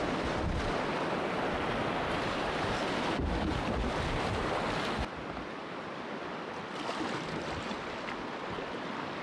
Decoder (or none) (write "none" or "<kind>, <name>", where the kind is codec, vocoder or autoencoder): none